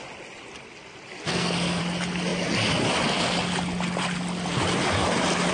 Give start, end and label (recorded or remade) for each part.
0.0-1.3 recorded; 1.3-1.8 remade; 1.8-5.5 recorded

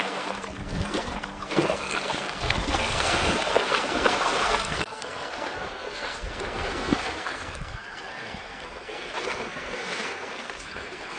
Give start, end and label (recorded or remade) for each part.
0.0-11.2 remade

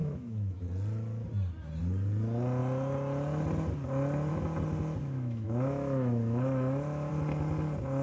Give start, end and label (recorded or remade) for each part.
0.0-0.6 remade; 0.6-5.0 recorded; 5.0-7.1 remade; 7.1-8.0 recorded